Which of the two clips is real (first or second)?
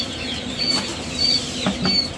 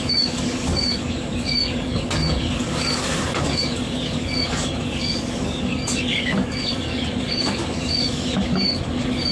first